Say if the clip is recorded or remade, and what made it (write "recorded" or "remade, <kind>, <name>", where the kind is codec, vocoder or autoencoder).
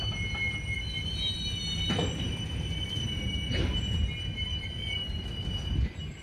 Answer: recorded